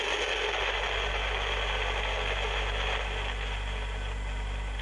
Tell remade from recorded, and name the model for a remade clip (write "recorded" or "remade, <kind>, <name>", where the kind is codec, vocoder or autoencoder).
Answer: recorded